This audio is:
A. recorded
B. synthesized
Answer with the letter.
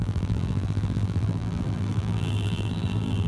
B